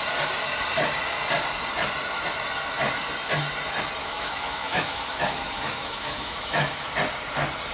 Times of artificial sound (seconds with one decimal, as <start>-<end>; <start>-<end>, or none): 4.0-6.9